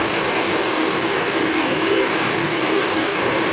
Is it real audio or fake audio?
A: fake